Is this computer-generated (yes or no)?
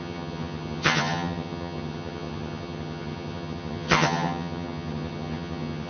yes